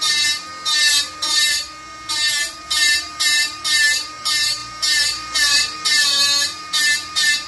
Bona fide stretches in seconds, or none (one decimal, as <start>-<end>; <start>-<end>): 0.5-2.3